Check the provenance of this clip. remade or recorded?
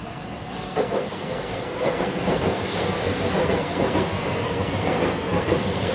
remade